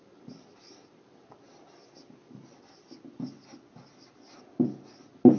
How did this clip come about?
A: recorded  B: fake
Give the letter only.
A